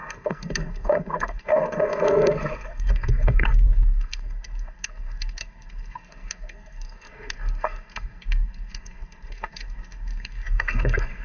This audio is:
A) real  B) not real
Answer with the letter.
B